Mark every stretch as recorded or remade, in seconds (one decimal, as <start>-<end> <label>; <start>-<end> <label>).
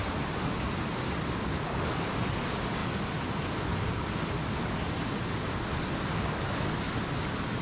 0.0-7.6 recorded